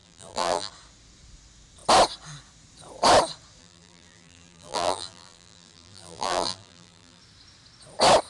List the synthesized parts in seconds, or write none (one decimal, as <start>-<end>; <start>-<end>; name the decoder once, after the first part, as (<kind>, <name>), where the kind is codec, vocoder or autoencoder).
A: 0.0-0.7 (vocoder, BigVGAN v2); 3.6-7.2